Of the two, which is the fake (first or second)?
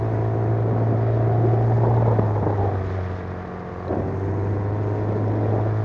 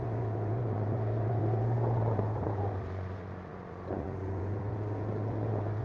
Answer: second